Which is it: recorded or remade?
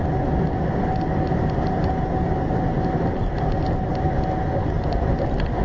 recorded